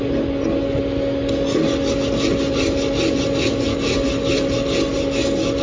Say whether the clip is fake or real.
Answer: real